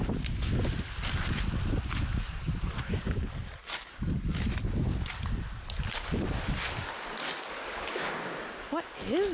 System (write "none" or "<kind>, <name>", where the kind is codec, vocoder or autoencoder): none